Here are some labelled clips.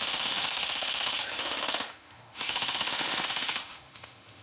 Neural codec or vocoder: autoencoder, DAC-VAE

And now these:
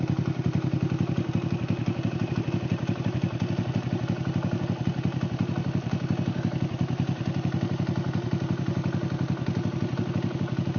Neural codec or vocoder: none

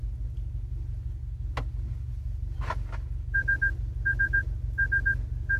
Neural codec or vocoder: none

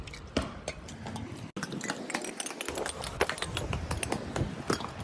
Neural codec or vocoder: none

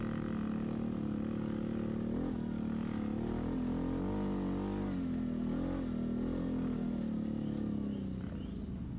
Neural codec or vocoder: none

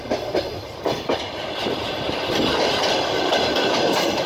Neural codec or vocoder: none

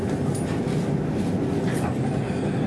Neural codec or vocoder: none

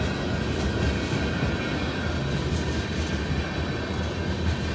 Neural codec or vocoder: none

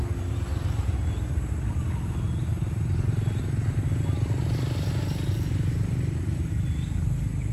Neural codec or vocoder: none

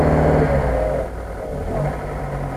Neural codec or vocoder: none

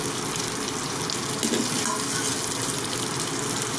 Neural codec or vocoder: none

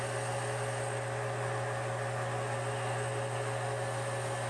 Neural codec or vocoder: none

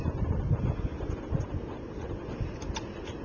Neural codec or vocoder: none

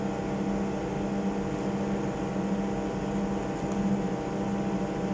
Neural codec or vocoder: none